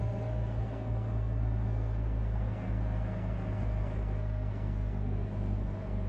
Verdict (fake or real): fake